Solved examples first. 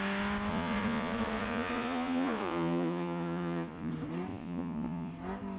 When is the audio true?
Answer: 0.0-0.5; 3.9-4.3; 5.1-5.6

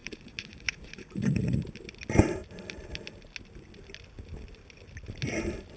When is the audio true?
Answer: 1.6-5.8

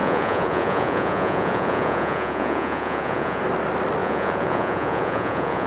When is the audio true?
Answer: 3.4-4.0

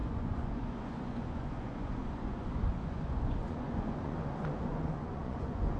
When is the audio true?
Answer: none

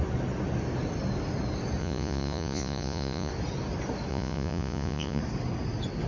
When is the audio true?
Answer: 0.0-1.8; 3.3-4.1; 5.2-6.1

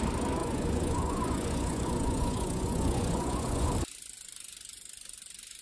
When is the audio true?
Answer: 0.0-0.4; 3.7-5.6